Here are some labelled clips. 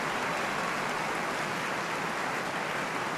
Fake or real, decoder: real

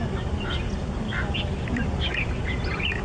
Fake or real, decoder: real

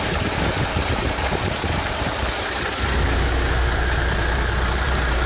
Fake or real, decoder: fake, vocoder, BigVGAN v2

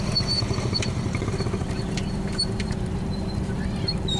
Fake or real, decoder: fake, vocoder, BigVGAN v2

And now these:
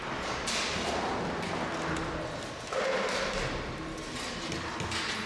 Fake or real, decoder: real